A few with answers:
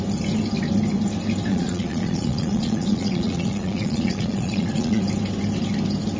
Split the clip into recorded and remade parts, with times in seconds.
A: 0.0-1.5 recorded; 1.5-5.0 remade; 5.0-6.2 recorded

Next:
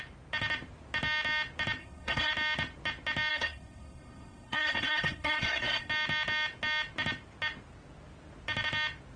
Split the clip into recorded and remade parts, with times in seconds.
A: 0.0-1.8 recorded; 1.8-2.3 remade; 2.3-3.3 recorded; 3.3-5.9 remade; 5.9-9.2 recorded